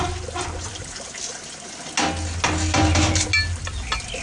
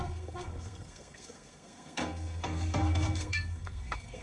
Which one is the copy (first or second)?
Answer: second